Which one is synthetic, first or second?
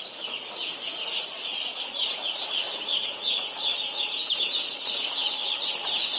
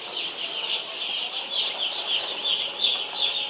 first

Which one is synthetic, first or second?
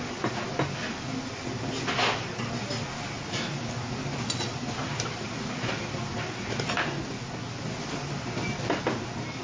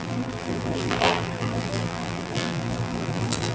second